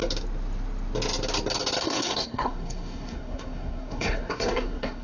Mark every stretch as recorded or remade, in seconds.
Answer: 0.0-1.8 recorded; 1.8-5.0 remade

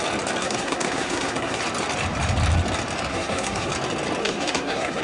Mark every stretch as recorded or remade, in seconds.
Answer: 0.0-0.4 recorded; 0.4-1.6 remade; 1.6-3.1 recorded; 3.1-3.7 remade; 3.7-4.2 recorded; 4.2-5.0 remade

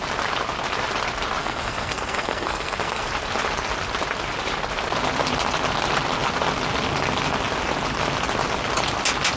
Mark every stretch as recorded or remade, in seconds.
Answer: 0.0-1.4 recorded; 1.4-3.1 remade; 3.1-9.4 recorded

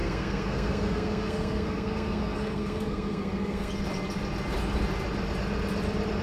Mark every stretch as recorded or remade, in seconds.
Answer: 0.0-3.7 remade; 3.7-6.2 recorded